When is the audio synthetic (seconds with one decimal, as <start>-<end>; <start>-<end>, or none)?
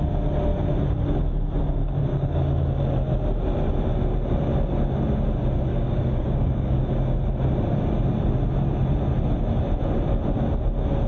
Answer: 2.1-2.8; 5.7-6.9